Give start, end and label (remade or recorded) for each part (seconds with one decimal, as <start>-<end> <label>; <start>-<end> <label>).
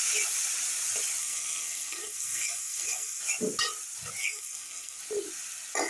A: 0.0-1.2 recorded; 1.2-3.2 remade; 3.2-4.2 recorded; 4.2-5.0 remade; 5.0-5.9 recorded